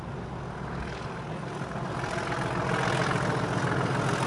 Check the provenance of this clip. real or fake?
real